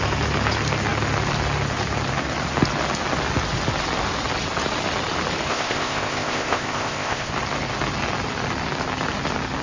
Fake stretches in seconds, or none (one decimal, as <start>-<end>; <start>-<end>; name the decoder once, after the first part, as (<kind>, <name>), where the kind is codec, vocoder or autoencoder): 5.5-7.3 (codec, ZipCodec)